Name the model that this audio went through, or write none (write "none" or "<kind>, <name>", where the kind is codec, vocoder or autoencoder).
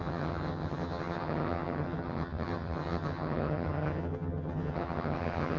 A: vocoder, HiFi-GAN